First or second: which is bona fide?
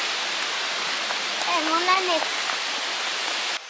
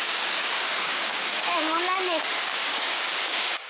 first